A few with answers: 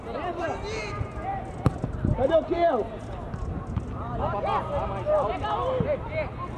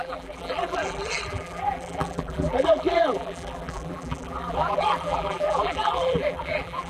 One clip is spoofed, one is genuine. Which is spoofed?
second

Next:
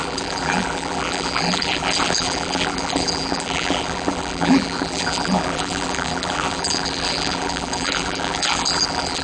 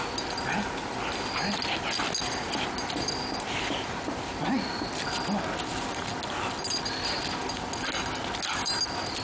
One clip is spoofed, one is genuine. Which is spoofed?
first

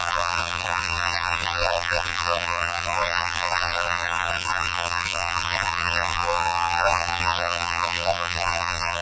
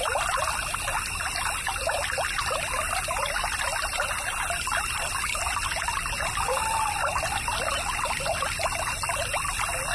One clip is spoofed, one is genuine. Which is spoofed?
first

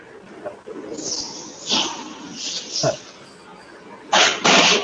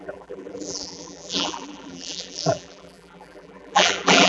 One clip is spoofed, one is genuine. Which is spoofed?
second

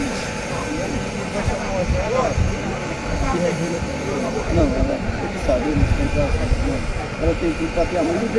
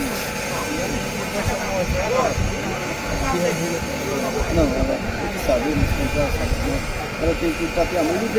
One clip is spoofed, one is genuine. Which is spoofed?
first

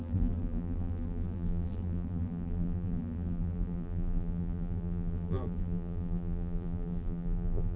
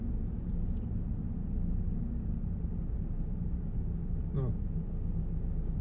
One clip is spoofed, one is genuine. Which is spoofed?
first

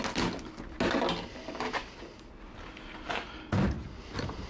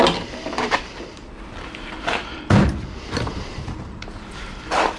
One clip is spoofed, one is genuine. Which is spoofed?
second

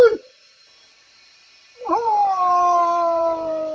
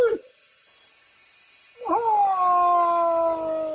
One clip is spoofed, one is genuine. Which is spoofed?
first